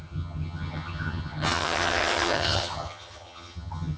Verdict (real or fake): fake